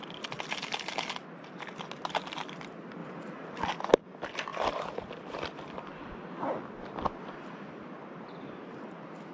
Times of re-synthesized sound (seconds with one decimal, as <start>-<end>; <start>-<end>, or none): 3.0-3.7; 4.5-5.0